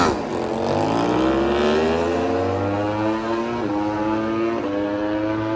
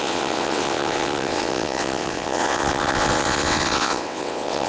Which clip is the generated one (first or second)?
second